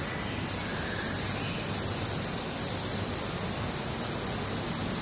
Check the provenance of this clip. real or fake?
real